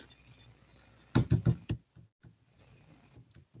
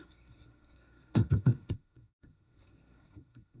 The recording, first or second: first